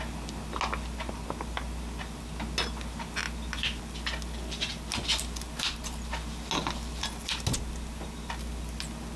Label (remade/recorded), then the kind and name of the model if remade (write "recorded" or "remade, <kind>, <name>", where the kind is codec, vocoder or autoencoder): recorded